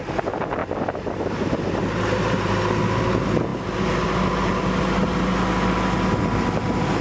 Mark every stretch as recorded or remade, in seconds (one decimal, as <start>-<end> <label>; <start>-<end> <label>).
0.0-0.6 recorded; 0.6-2.6 remade; 2.6-7.0 recorded